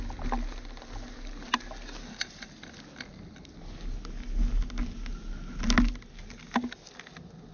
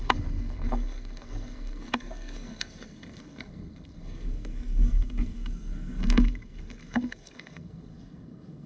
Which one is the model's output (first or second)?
second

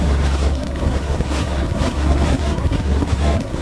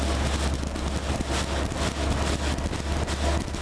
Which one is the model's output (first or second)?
first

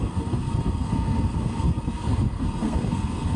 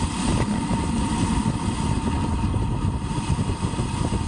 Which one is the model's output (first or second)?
first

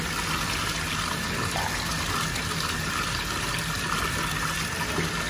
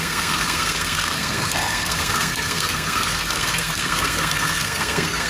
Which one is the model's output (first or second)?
second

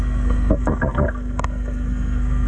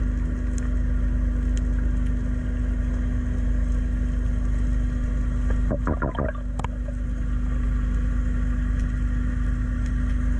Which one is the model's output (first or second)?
first